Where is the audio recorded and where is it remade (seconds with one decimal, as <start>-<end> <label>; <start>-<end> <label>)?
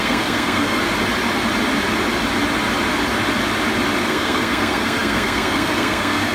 0.0-0.8 remade; 0.8-4.0 recorded; 4.0-6.3 remade